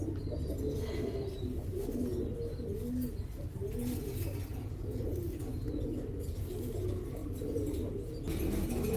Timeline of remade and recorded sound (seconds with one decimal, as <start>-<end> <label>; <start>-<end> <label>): 0.0-4.5 recorded; 4.5-5.5 remade; 5.5-9.0 recorded